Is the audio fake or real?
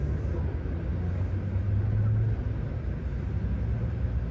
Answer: real